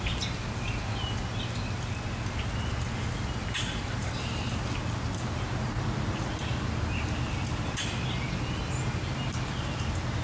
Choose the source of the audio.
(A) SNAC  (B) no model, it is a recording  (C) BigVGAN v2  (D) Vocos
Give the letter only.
B